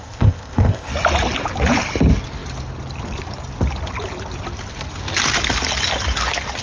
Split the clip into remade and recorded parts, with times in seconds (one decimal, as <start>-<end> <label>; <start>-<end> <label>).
0.0-0.9 remade; 0.9-6.6 recorded